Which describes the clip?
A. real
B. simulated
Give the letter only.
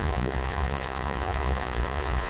B